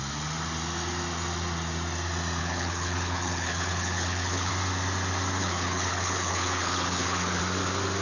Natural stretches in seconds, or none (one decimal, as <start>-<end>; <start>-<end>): 0.0-2.4; 4.5-5.4; 7.4-8.0